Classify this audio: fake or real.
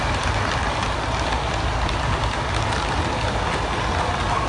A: real